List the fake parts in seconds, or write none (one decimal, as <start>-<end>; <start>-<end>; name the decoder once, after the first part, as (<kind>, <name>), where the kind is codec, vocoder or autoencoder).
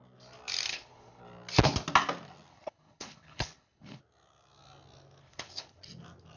0.7-1.2 (codec, HILCodec); 2.5-4.0; 5.2-5.8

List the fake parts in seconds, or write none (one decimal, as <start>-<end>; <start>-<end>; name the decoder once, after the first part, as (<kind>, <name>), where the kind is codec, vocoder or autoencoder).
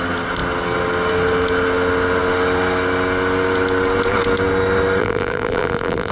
5.0-6.1 (vocoder, BigVGAN v2)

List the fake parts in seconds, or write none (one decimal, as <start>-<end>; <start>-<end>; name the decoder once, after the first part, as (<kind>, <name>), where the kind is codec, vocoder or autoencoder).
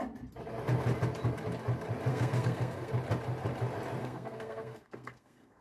2.1-2.9 (codec, SNAC); 4.0-5.6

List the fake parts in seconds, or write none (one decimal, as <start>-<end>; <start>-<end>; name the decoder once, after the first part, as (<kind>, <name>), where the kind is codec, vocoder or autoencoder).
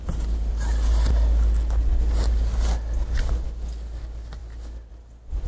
none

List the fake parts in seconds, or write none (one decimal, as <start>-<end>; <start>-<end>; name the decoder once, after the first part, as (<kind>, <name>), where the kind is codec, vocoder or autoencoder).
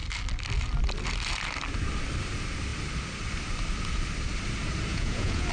4.9-5.5 (vocoder, Vocos)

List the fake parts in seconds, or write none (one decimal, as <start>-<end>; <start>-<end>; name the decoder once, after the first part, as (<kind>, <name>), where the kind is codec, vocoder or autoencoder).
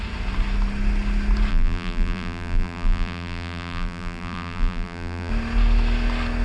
1.5-5.3 (vocoder, BigVGAN v2)